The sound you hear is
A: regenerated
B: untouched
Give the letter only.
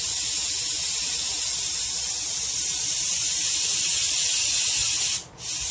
B